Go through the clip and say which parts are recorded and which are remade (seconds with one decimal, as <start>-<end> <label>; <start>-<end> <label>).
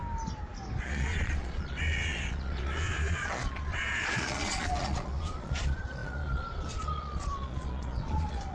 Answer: 0.0-0.8 recorded; 0.8-8.5 remade